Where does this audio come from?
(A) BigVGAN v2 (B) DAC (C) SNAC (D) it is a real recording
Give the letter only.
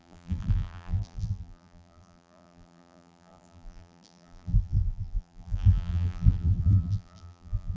A